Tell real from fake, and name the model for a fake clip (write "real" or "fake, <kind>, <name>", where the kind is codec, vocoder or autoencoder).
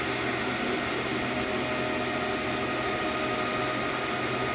real